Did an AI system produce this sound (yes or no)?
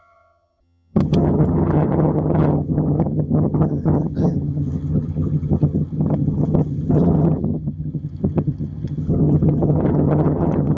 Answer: yes